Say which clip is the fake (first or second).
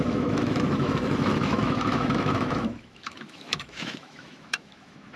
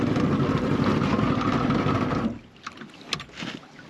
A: first